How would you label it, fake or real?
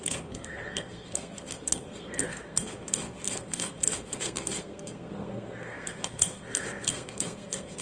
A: fake